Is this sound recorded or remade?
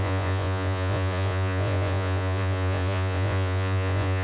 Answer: remade